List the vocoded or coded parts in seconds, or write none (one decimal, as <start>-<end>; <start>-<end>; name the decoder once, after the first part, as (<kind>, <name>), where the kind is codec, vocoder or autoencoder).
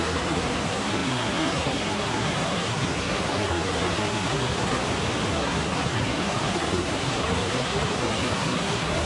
0.0-4.8 (codec, SNAC); 5.3-9.1